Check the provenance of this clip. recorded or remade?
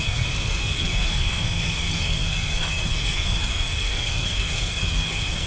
remade